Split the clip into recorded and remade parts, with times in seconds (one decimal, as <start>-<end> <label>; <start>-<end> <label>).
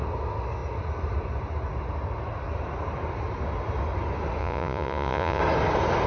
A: 0.0-4.4 recorded; 4.4-5.4 remade; 5.4-6.1 recorded